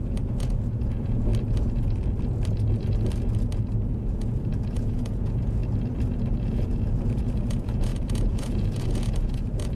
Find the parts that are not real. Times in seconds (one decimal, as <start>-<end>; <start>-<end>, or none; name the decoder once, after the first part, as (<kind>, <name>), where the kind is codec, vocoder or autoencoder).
0.0-1.3 (vocoder, Vocos); 3.9-5.6; 6.4-9.7